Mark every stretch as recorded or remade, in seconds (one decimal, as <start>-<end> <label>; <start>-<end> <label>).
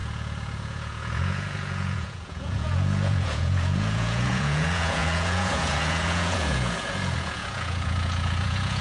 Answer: 0.0-8.8 remade